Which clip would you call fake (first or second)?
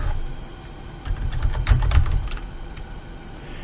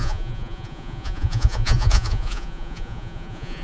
second